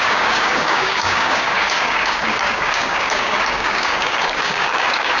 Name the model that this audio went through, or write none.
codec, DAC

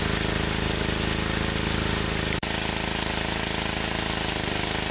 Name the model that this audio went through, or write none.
none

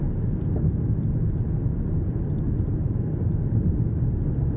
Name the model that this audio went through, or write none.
none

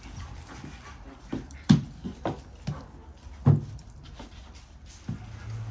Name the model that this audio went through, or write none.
none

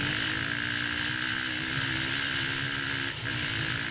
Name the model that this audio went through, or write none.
none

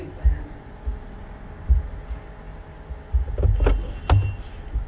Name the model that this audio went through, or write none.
none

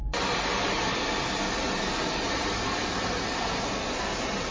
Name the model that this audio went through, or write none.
none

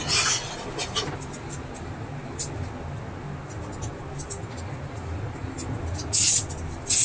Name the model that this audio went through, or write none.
none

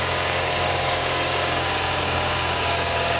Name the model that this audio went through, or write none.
codec, DAC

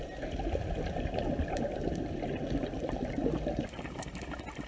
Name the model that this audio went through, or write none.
none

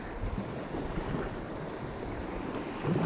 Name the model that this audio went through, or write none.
none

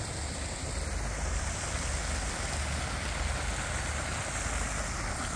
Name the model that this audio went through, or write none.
none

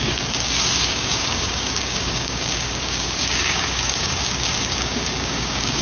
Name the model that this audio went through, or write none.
codec, DAC